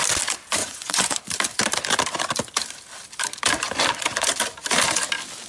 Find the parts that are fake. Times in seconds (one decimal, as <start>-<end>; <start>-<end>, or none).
0.6-1.2